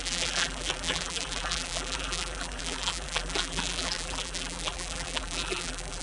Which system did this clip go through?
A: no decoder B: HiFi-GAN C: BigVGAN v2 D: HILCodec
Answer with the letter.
C